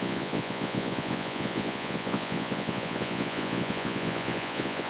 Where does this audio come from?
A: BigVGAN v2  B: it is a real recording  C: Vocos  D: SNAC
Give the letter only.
C